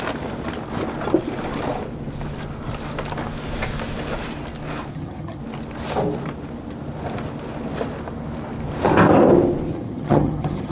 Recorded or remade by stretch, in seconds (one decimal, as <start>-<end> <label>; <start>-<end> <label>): 0.0-4.9 recorded; 4.9-5.4 remade; 5.4-9.7 recorded; 9.7-10.7 remade